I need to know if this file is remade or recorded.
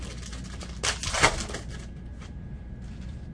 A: recorded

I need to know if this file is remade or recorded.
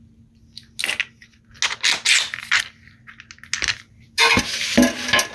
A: recorded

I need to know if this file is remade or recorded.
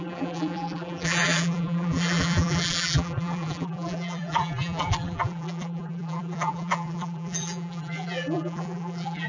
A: remade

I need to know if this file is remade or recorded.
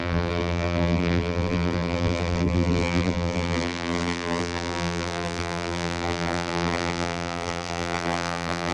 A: remade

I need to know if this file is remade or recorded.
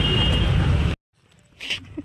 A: recorded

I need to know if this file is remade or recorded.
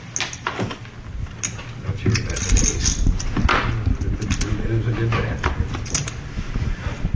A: recorded